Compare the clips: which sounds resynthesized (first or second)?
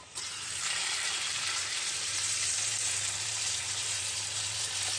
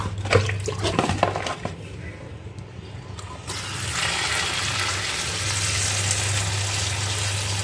first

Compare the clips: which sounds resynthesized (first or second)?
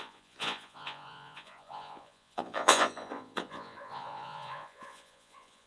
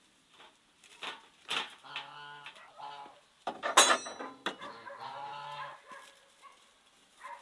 first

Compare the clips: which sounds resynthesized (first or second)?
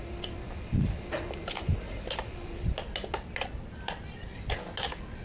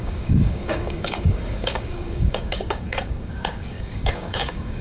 second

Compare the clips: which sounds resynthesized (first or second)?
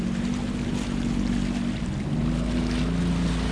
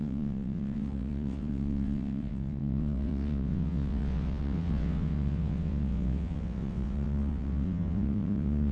second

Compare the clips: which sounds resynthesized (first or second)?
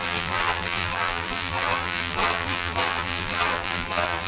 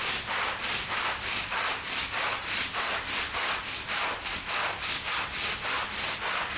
first